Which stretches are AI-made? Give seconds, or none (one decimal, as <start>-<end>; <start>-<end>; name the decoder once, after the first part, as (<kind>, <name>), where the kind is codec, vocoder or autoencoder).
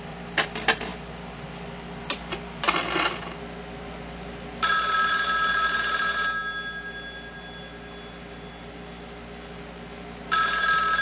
none